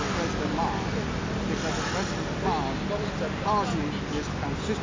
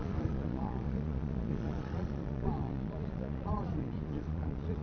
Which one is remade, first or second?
second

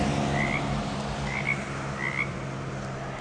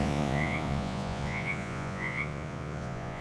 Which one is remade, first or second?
second